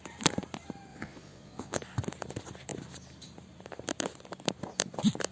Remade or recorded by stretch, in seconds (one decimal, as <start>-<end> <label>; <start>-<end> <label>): 0.0-0.9 recorded; 0.9-1.8 remade; 1.8-5.3 recorded